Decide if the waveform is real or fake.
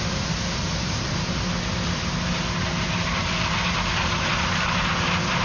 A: real